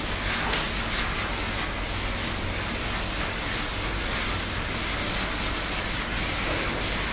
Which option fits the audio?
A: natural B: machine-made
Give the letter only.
A